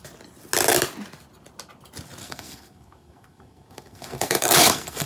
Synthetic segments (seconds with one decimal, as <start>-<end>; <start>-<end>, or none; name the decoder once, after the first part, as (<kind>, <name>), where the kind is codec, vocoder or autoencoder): 2.2-5.1 (codec, SNAC)